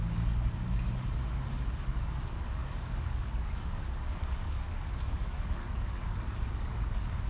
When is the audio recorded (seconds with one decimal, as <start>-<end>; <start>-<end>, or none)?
none